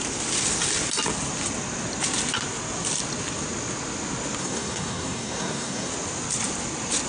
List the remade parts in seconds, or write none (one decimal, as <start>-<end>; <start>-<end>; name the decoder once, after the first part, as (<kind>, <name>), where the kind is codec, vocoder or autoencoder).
4.4-5.9 (codec, SNAC)